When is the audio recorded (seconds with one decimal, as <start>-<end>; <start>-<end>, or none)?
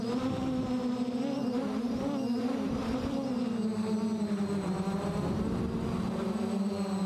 none